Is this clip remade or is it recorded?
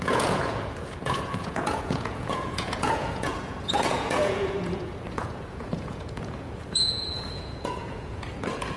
remade